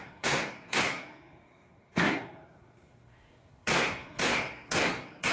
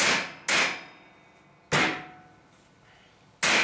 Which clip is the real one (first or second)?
second